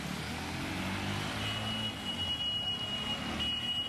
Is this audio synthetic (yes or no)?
no